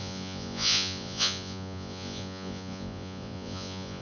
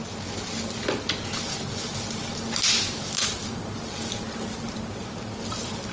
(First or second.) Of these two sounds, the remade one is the first